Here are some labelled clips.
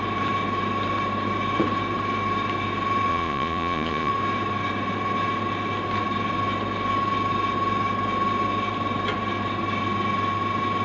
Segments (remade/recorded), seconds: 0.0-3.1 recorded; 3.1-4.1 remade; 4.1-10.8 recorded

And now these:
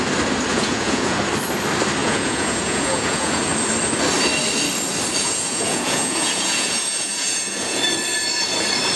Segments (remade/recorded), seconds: 0.0-0.5 recorded; 0.5-1.2 remade; 1.2-2.0 recorded; 2.0-3.4 remade; 3.4-5.2 recorded; 5.2-7.8 remade; 7.8-9.0 recorded

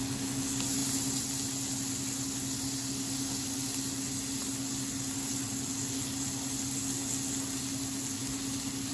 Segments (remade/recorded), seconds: 0.0-8.9 recorded

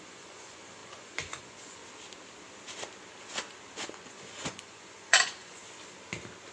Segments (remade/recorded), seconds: 0.0-1.8 remade; 1.8-3.8 recorded; 3.8-5.6 remade; 5.6-6.5 recorded